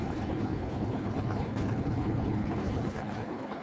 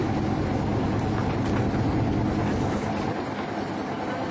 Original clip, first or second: second